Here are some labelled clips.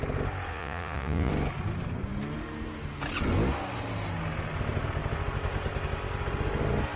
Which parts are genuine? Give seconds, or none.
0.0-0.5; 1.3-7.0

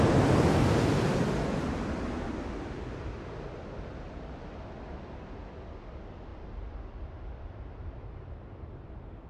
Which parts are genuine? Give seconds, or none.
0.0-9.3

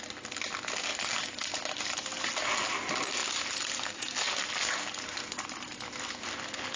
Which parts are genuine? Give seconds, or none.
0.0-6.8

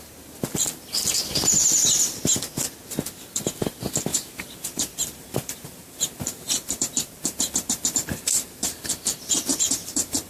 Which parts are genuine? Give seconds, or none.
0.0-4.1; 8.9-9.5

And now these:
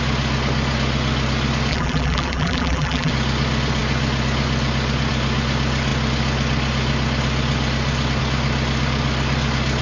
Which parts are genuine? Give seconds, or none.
0.0-1.7; 3.1-9.8

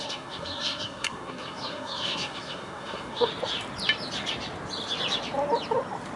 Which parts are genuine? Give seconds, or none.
3.3-6.2

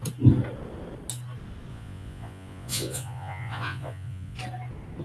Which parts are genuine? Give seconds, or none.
0.0-1.7; 4.4-5.0

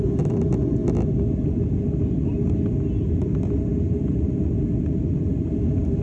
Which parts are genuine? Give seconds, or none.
0.0-6.0